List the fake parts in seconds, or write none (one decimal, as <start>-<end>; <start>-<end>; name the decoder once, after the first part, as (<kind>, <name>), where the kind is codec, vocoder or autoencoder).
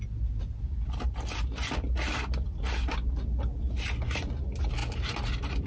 none